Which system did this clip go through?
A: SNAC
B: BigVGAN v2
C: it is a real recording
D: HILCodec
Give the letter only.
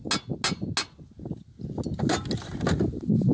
C